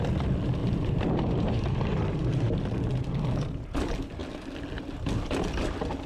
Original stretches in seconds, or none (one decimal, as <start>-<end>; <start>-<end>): 0.0-0.6; 2.3-6.1